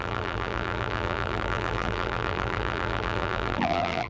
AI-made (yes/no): yes